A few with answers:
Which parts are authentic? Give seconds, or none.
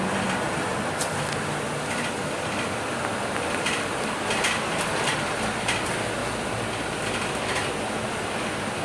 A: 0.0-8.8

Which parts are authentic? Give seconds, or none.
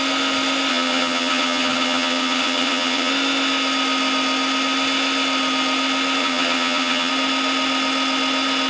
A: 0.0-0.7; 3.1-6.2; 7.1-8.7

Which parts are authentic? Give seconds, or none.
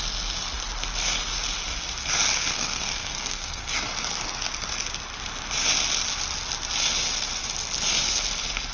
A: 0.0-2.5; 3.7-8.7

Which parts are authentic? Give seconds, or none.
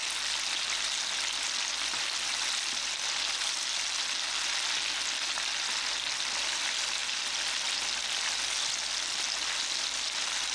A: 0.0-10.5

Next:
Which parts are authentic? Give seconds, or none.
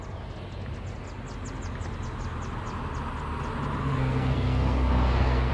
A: 0.0-3.8